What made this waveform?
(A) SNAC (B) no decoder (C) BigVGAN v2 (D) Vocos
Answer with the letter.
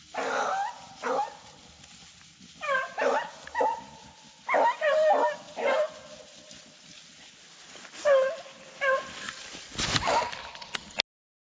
B